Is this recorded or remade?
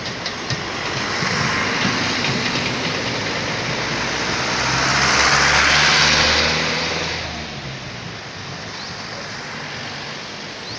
recorded